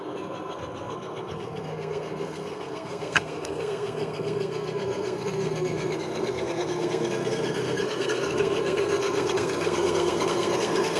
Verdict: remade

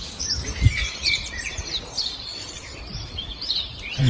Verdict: remade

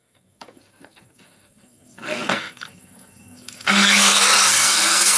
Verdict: remade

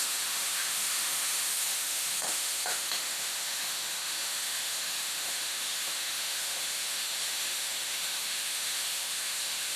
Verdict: remade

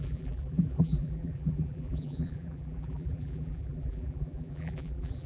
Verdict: remade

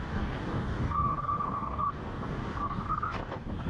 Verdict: remade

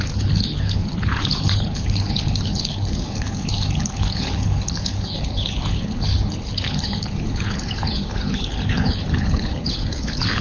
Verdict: remade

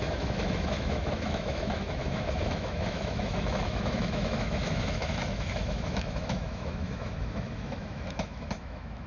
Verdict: remade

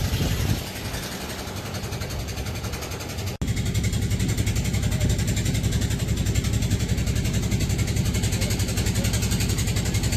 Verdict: recorded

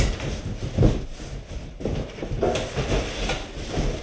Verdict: recorded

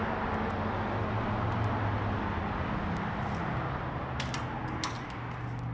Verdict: recorded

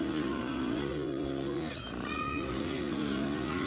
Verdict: remade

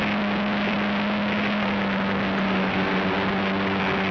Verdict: recorded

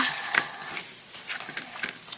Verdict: recorded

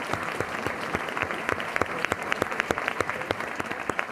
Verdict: remade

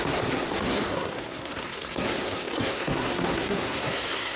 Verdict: remade